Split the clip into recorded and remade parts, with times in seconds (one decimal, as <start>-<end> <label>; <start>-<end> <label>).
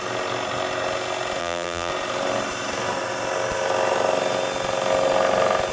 0.0-1.4 recorded; 1.4-1.9 remade; 1.9-5.7 recorded